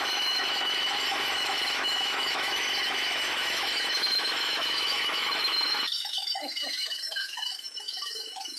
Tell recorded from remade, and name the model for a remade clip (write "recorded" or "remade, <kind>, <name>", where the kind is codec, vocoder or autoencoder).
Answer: remade, autoencoder, DAC-VAE